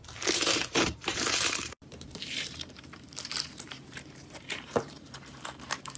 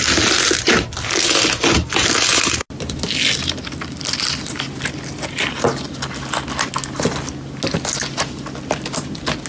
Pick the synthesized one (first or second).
first